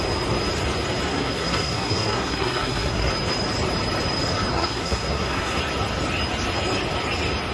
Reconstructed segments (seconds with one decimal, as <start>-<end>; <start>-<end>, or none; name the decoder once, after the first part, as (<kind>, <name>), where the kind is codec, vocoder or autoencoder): 1.1-3.1 (codec, SNAC); 4.5-5.6